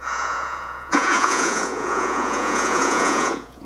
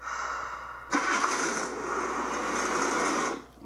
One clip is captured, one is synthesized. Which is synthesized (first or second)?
first